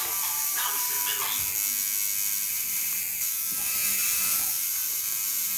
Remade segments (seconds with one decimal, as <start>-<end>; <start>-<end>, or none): 0.0-1.0; 2.5-5.6